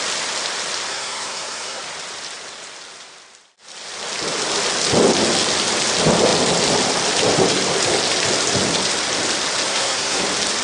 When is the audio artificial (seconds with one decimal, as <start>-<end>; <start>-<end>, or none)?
0.9-1.8; 9.7-10.2